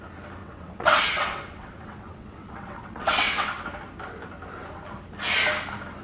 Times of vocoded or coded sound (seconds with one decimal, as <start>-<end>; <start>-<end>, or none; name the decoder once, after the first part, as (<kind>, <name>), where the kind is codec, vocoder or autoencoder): 0.4-3.6 (vocoder, WaveNeXt)